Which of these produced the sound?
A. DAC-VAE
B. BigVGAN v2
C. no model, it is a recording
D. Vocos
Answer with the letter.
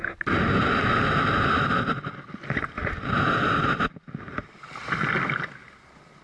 C